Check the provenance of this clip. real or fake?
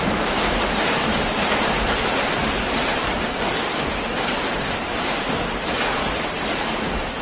fake